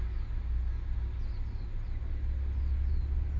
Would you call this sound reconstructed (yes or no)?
no